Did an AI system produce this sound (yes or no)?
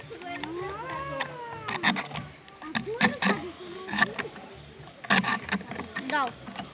no